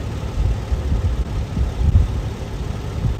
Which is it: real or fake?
real